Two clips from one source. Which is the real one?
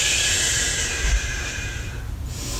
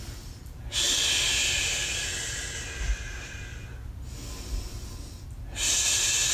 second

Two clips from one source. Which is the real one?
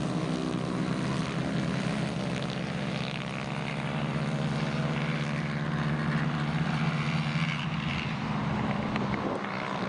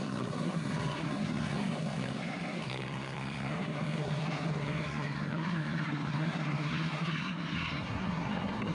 first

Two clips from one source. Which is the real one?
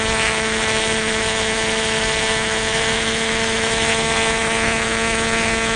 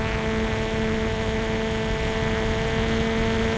second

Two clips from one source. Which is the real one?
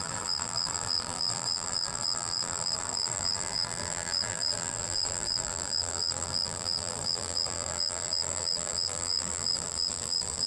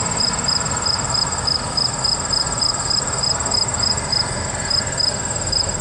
second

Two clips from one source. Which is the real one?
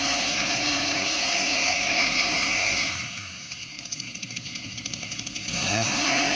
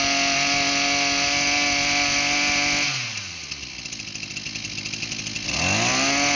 second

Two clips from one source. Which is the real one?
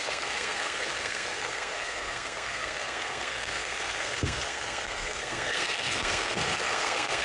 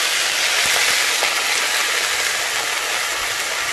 second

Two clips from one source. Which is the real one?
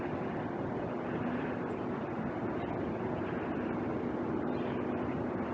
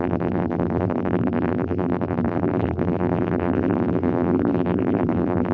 first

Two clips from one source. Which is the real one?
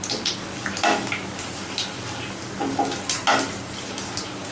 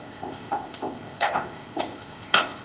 first